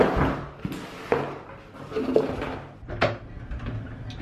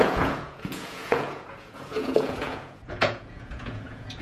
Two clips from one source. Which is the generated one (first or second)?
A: second